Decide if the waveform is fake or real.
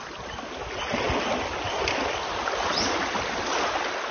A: real